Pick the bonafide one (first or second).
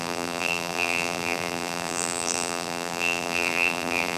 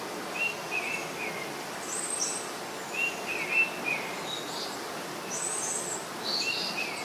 second